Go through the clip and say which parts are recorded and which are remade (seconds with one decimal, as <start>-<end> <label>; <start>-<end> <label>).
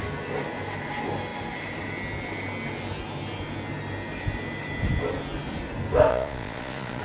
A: 0.0-6.1 recorded; 6.1-7.0 remade